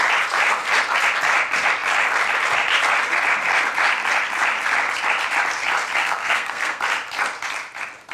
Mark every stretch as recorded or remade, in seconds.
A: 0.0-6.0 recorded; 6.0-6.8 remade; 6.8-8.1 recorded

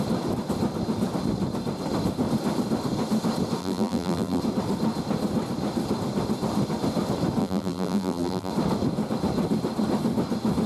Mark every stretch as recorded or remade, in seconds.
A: 0.0-3.6 recorded; 3.6-4.4 remade; 4.4-7.4 recorded; 7.4-8.5 remade; 8.5-10.7 recorded

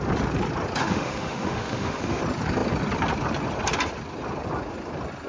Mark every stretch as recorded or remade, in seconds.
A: 0.0-0.8 recorded; 0.8-2.2 remade; 2.2-5.3 recorded